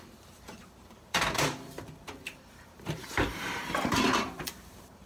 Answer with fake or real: fake